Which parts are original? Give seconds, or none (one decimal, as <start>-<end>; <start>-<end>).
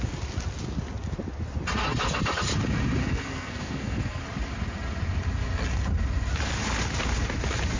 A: 0.0-3.0; 4.2-7.8